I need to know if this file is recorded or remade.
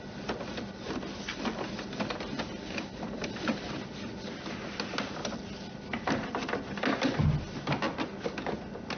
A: recorded